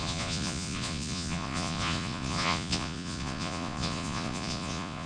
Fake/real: fake